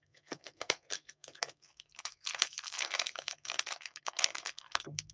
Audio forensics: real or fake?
fake